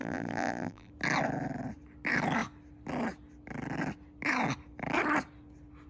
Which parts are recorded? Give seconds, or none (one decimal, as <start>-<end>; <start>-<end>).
0.9-5.9